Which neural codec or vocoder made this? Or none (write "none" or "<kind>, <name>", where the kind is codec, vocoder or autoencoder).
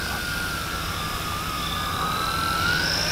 none